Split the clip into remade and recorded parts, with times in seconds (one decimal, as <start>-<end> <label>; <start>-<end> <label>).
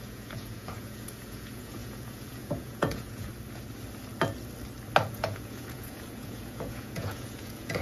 0.0-3.3 remade; 3.3-5.1 recorded; 5.1-7.8 remade